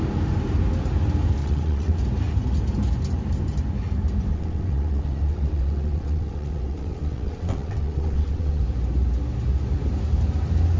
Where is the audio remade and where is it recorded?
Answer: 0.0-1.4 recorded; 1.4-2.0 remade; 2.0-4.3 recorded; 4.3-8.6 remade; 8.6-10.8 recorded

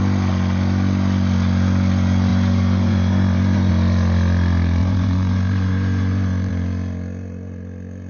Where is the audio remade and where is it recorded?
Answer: 0.0-2.3 recorded; 2.3-3.7 remade; 3.7-4.8 recorded; 4.8-6.5 remade; 6.5-8.1 recorded

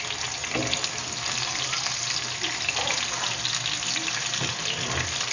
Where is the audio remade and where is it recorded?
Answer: 0.0-5.3 recorded

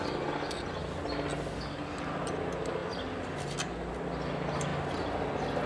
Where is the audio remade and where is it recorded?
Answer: 0.0-5.7 recorded